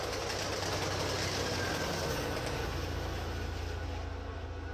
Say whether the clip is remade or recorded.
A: recorded